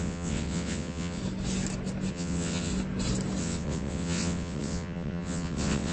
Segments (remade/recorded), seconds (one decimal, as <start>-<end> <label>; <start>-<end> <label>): 0.0-1.2 remade; 1.2-2.1 recorded; 2.1-2.7 remade; 2.7-3.4 recorded; 3.4-5.9 remade